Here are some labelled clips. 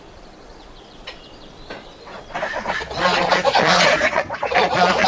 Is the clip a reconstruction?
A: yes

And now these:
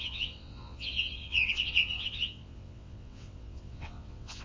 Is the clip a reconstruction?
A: yes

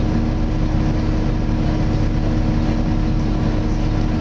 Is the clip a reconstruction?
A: no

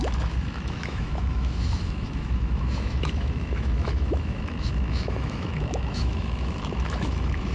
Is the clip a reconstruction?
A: yes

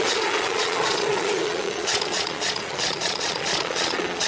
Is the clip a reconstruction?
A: yes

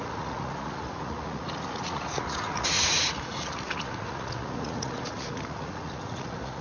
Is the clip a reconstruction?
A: yes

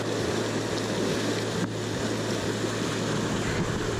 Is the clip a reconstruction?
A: no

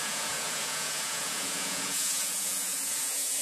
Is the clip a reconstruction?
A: yes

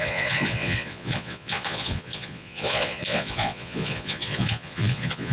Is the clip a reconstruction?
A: yes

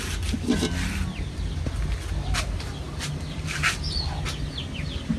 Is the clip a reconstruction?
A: no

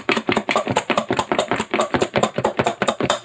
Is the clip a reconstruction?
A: yes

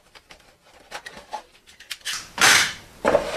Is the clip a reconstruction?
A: no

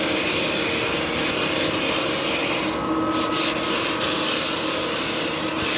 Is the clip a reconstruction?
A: no